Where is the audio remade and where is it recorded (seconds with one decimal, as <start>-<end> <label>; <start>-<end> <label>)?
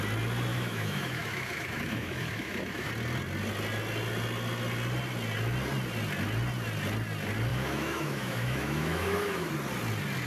0.0-0.5 recorded; 0.5-2.9 remade; 2.9-7.5 recorded; 7.5-9.5 remade; 9.5-10.3 recorded